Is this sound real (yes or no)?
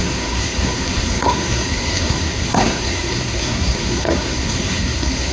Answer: no